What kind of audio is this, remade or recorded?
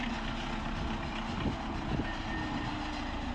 recorded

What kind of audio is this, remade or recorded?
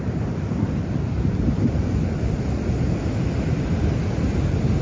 remade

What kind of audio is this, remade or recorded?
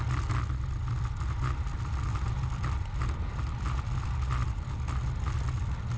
recorded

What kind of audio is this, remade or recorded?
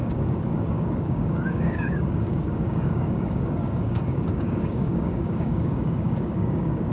remade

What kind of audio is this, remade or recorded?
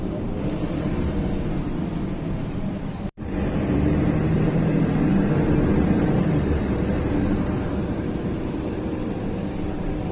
remade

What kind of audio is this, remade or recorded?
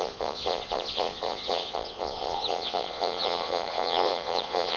remade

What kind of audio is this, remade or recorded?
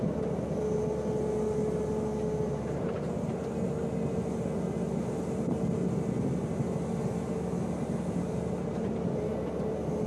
recorded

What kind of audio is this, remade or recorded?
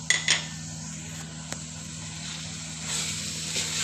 recorded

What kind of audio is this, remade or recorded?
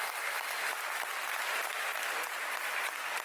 recorded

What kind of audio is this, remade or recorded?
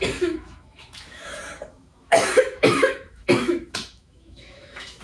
remade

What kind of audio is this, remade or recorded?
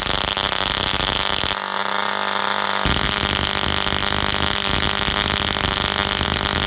recorded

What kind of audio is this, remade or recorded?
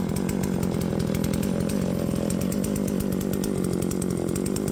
recorded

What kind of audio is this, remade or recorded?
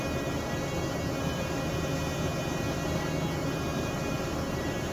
recorded